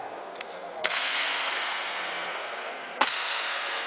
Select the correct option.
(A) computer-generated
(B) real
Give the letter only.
A